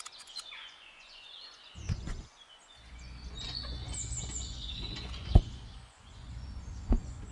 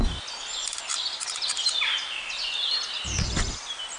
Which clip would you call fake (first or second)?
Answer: first